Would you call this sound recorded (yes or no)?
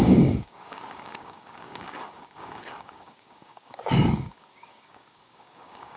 no